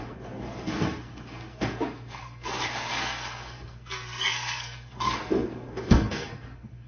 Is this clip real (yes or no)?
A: no